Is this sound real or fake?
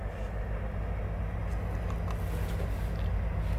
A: real